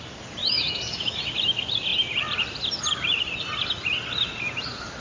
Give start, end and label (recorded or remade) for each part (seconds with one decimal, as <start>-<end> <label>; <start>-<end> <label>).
0.0-0.4 recorded; 0.4-1.2 remade; 1.2-5.0 recorded